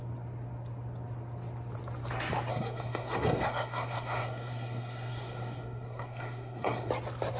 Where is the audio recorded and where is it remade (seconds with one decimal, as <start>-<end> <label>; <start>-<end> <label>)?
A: 0.0-2.5 recorded; 2.5-6.9 remade; 6.9-7.4 recorded